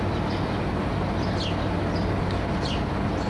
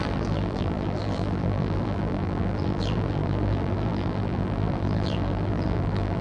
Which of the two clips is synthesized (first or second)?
second